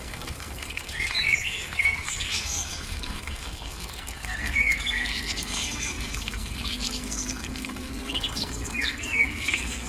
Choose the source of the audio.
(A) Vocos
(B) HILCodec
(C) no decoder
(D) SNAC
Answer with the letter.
D